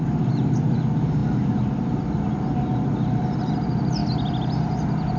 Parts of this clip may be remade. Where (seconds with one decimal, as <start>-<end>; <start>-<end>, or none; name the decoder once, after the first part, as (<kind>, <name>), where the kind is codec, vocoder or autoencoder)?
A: 0.0-4.0 (vocoder, BigVGAN v2)